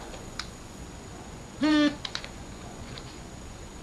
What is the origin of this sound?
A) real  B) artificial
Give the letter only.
B